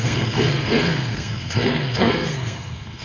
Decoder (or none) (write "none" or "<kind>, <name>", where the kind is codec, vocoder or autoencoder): codec, SNAC